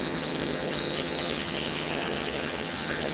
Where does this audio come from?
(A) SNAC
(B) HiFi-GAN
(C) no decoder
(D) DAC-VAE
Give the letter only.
B